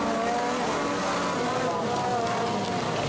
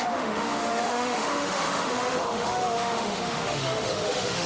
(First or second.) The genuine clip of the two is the first